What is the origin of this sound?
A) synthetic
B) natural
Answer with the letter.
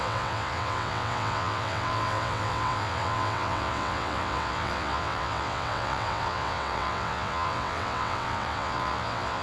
A